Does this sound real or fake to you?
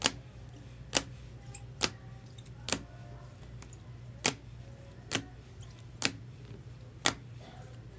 real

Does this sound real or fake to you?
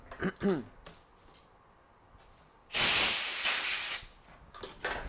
real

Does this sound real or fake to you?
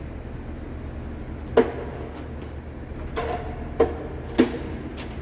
real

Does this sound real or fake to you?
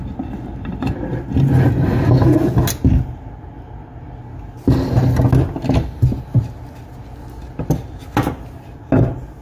real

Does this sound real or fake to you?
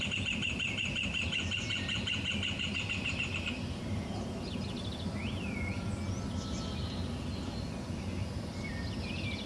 real